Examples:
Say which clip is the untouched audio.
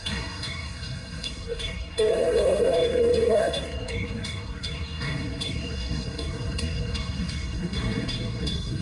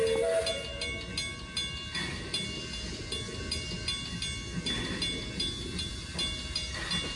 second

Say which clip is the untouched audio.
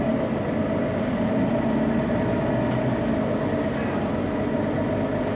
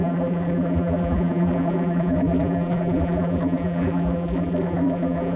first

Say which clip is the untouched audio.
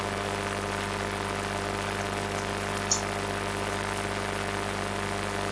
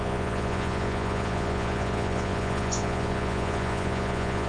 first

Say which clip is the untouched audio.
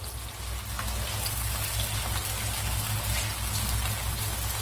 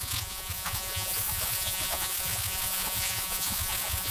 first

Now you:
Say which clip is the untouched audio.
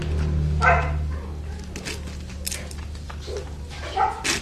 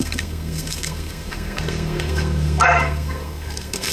first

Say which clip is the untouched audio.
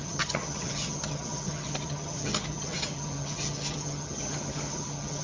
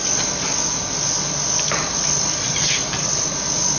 second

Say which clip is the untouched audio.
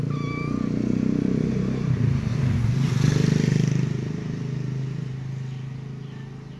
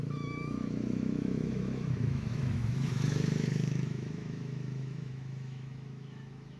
first